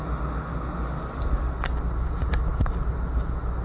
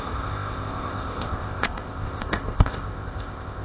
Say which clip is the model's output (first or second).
second